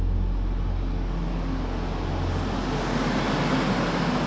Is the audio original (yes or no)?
yes